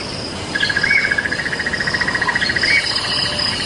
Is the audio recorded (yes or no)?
yes